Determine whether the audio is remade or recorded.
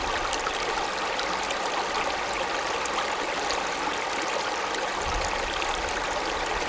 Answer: recorded